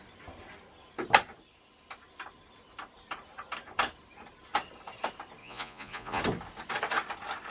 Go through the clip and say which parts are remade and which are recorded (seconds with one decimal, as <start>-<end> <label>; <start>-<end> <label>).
0.0-5.4 recorded; 5.4-6.2 remade; 6.2-7.5 recorded